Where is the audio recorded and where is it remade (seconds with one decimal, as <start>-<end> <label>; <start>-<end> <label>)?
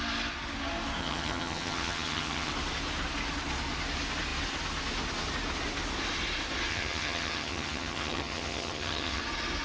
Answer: 0.0-1.0 recorded; 1.0-2.5 remade; 2.5-6.7 recorded; 6.7-9.2 remade; 9.2-9.6 recorded